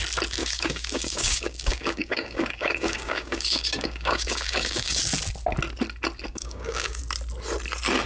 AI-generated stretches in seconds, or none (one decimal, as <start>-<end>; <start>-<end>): 0.4-5.0; 6.3-7.0